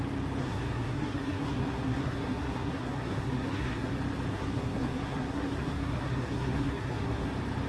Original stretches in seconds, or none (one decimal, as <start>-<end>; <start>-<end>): 0.0-0.4; 3.9-4.3; 7.3-7.7